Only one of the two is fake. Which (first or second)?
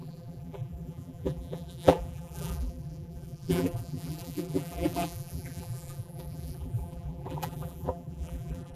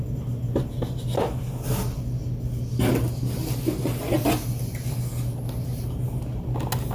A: first